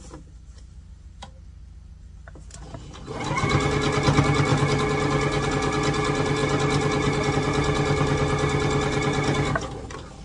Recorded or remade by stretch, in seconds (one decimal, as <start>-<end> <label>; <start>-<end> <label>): 0.0-10.2 recorded